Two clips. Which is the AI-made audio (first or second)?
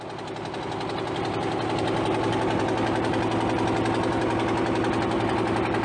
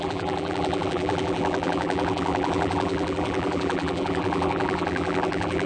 second